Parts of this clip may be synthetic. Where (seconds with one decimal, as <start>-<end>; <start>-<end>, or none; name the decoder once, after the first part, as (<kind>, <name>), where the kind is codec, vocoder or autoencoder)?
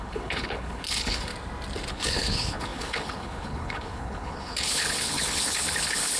0.0-1.3 (codec, HILCodec); 1.9-6.2